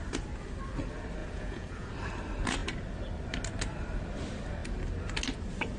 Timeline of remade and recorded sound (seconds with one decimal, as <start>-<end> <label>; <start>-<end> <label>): 0.0-1.2 recorded; 1.2-1.9 remade; 1.9-5.8 recorded